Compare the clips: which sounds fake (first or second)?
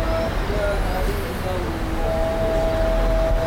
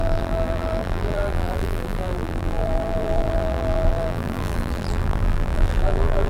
second